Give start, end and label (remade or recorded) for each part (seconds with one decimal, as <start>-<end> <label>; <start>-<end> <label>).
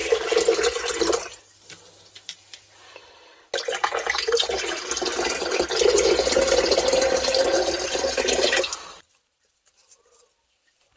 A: 0.0-11.0 recorded